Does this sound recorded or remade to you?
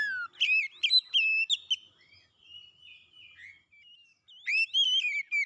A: recorded